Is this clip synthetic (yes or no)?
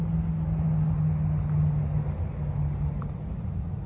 no